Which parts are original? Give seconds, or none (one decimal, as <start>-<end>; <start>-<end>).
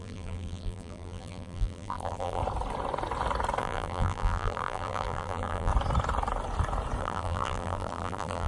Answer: 2.4-3.6; 5.7-7.0